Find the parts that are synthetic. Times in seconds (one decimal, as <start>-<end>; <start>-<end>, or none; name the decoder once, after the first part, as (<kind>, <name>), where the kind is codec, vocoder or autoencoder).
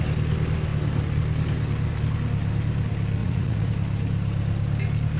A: 3.2-3.7 (vocoder, Vocos)